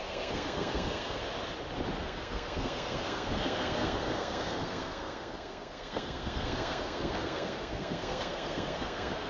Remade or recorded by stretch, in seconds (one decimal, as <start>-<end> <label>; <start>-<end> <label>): 0.0-1.2 remade; 1.2-2.0 recorded; 2.0-9.3 remade

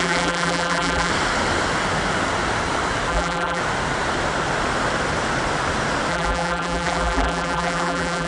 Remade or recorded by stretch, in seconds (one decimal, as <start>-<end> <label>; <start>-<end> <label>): 0.0-1.1 remade; 1.1-3.1 recorded; 3.1-3.6 remade; 3.6-6.1 recorded; 6.1-8.3 remade

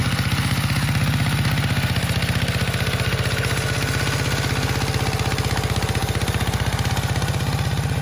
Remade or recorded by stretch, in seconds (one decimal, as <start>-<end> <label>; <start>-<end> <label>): 0.0-8.0 recorded

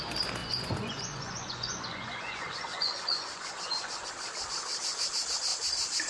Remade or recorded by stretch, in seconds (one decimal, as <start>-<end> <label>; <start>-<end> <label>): 0.0-0.4 recorded; 0.4-4.1 remade; 4.1-6.1 recorded